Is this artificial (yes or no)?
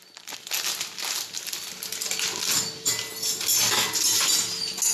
no